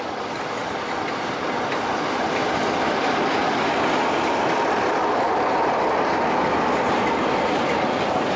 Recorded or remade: recorded